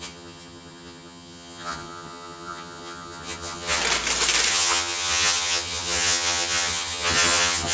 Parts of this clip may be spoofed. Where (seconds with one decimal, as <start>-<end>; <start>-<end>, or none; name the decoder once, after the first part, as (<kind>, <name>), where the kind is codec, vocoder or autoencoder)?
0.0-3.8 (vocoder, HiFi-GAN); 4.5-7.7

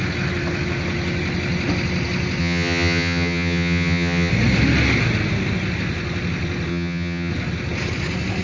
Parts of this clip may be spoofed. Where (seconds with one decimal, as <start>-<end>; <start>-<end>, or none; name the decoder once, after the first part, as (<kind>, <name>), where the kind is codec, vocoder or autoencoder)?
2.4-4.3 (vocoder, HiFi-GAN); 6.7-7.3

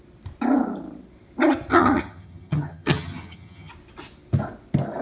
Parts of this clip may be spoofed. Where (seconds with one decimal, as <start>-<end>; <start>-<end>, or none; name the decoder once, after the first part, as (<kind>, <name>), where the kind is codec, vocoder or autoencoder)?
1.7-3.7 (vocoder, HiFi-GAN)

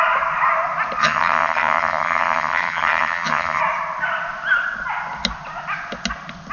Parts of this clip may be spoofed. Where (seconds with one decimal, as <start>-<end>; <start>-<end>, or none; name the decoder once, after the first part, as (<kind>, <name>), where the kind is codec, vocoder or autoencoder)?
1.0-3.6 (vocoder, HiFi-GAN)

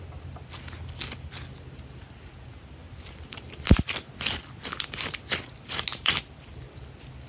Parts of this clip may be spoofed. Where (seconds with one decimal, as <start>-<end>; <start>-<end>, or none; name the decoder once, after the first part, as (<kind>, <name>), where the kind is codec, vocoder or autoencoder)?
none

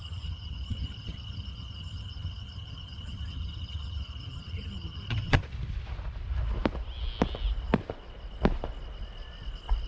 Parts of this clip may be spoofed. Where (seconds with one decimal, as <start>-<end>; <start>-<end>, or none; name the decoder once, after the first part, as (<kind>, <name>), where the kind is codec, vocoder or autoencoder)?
0.0-5.4 (vocoder, HiFi-GAN)